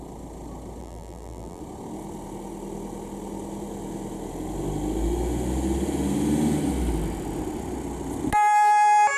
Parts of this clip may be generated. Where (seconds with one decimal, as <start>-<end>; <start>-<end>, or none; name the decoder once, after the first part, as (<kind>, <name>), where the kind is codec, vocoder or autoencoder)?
0.8-1.6 (vocoder, BigVGAN v2)